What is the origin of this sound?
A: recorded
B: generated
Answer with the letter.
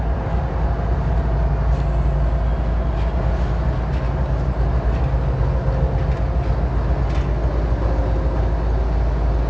A